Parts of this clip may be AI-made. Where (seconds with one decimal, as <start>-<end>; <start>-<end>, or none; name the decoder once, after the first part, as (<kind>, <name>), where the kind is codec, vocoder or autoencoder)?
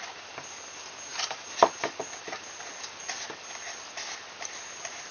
none